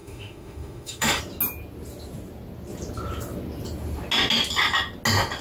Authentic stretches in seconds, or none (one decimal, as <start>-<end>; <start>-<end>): 1.2-5.4